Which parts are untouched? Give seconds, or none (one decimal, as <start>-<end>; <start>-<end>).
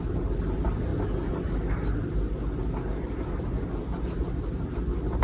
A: 0.0-5.2